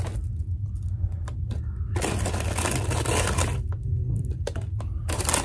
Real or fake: real